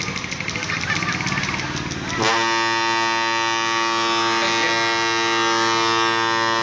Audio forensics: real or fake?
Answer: real